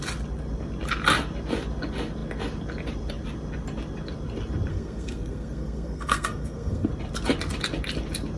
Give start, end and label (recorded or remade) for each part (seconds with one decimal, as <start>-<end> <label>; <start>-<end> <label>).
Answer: 0.0-4.7 recorded; 4.7-6.9 remade; 6.9-8.4 recorded